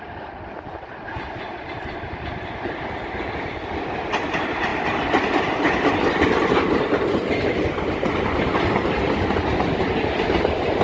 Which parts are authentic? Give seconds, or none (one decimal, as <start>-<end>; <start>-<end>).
4.7-9.0